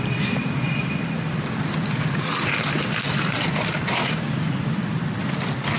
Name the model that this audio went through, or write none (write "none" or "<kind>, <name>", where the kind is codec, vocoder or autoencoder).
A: none